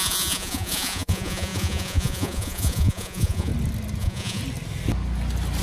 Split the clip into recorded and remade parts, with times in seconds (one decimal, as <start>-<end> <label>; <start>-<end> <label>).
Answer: 0.0-3.5 remade; 3.5-4.0 recorded; 4.0-4.4 remade; 4.4-5.6 recorded

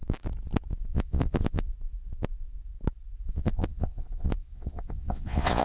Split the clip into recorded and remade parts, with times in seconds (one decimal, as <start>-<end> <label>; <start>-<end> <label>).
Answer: 0.0-0.9 recorded; 0.9-1.7 remade; 1.7-3.3 recorded; 3.3-5.6 remade

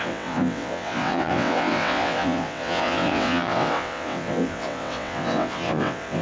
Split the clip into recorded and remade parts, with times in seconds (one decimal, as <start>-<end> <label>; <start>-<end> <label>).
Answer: 0.0-6.2 remade

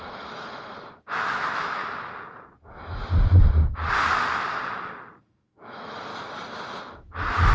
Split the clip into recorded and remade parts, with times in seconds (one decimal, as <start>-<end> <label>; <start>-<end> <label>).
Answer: 0.0-1.8 remade; 1.8-2.6 recorded; 2.6-3.0 remade; 3.0-5.2 recorded; 5.2-6.1 remade; 6.1-6.8 recorded; 6.8-7.5 remade

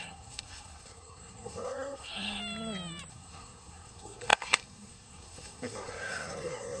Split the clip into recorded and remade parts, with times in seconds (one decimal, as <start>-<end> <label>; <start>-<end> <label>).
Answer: 0.0-2.4 remade; 2.4-3.1 recorded; 3.1-6.8 remade